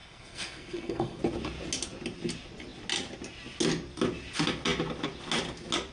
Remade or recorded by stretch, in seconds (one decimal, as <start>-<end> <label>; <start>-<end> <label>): 0.0-1.2 remade; 1.2-5.9 recorded